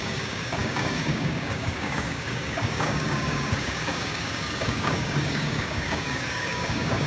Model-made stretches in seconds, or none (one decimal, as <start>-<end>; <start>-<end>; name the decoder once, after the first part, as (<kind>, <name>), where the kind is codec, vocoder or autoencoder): 0.0-7.1 (codec, DAC)